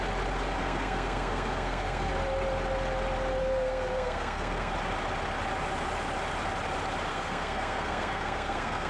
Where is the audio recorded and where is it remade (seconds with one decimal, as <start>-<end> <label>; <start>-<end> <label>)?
0.0-0.6 recorded; 0.6-2.1 remade; 2.1-3.4 recorded; 3.4-4.7 remade; 4.7-7.1 recorded; 7.1-8.9 remade

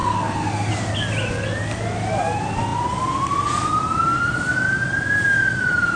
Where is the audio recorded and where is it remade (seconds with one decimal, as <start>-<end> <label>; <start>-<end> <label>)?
0.0-0.7 remade; 0.7-6.0 recorded

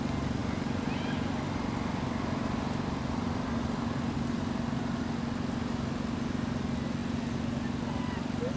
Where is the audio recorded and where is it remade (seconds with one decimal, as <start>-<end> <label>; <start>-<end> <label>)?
0.0-8.6 recorded

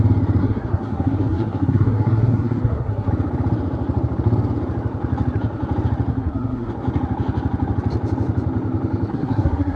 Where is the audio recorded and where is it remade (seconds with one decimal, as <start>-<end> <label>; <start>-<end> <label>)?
0.0-0.4 recorded; 0.4-3.1 remade; 3.1-6.1 recorded; 6.1-6.7 remade; 6.7-9.1 recorded; 9.1-9.8 remade